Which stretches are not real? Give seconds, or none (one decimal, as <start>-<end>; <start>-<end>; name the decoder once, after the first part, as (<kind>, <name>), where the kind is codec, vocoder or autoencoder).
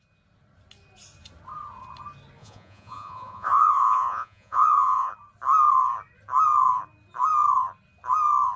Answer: 2.4-5.1 (vocoder, Vocos)